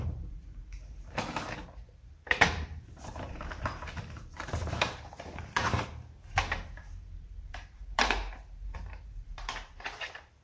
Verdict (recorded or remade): remade